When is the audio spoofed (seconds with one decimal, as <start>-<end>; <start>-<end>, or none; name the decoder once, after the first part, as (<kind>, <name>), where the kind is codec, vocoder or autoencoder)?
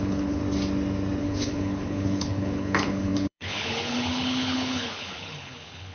0.0-0.4 (codec, HILCodec); 1.2-5.9